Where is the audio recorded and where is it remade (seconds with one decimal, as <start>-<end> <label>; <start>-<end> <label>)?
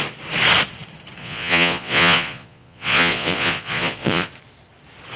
0.0-1.2 recorded; 1.2-4.3 remade; 4.3-5.2 recorded